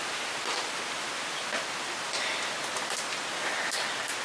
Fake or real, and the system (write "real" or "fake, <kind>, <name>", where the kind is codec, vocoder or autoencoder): real